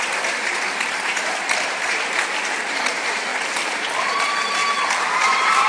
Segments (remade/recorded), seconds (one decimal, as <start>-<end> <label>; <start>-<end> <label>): 0.0-3.3 remade; 3.3-4.1 recorded; 4.1-4.6 remade; 4.6-5.2 recorded; 5.2-5.7 remade